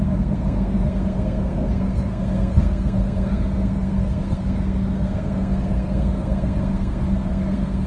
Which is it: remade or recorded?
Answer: remade